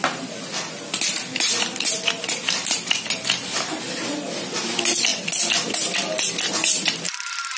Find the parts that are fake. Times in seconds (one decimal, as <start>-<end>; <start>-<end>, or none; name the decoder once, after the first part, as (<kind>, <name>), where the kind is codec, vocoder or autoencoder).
none